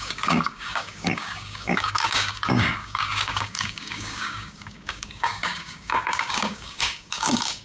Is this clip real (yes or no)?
no